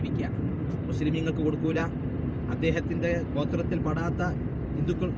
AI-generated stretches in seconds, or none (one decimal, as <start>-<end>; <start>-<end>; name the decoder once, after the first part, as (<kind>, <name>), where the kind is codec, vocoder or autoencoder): 0.0-0.6 (vocoder, BigVGAN v2); 1.3-1.8